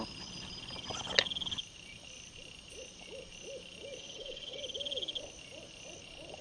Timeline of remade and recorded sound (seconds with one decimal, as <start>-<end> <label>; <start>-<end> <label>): 0.0-4.0 recorded; 4.0-4.6 remade; 4.6-6.4 recorded